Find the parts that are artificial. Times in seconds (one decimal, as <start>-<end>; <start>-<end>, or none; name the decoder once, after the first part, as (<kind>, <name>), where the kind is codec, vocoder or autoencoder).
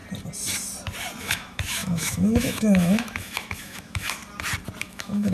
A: 1.2-4.2 (autoencoder, DAC-VAE); 4.8-5.3